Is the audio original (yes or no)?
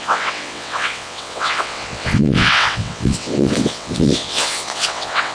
no